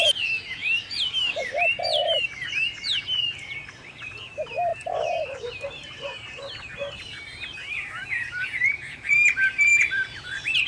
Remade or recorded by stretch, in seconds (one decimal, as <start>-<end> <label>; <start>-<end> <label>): 0.0-10.7 remade